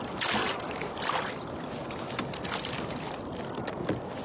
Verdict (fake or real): real